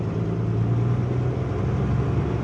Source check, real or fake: real